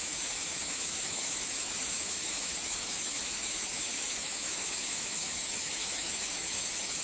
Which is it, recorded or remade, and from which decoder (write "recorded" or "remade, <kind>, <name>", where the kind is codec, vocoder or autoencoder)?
remade, autoencoder, DAC-VAE